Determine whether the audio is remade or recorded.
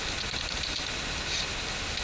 recorded